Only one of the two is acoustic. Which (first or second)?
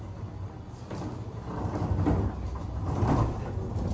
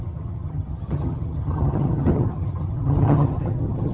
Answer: first